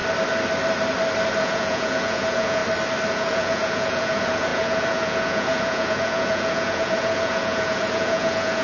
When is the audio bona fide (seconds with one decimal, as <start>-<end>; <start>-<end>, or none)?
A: 0.0-1.4; 2.6-3.1